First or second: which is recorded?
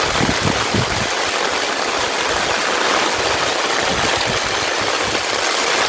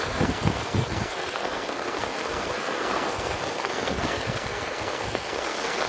first